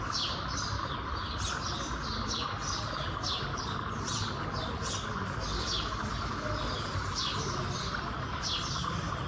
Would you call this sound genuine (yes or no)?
yes